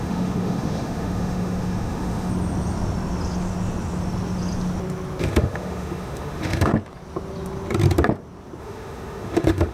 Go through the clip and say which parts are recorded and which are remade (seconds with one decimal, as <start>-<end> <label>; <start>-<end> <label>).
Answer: 0.0-2.3 remade; 2.3-5.2 recorded; 5.2-6.7 remade; 6.7-8.6 recorded; 8.6-9.7 remade